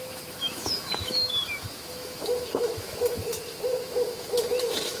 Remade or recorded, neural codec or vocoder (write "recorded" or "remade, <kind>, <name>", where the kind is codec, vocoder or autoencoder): remade, autoencoder, DAC-VAE